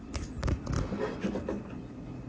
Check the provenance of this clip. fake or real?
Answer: real